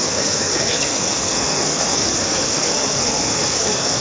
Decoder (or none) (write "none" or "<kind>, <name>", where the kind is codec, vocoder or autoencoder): codec, SNAC